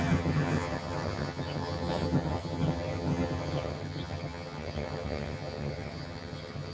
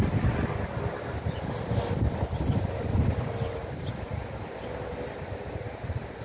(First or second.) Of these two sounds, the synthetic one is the first